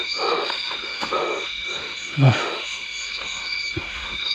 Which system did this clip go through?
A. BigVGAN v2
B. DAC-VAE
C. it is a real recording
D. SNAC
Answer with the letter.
B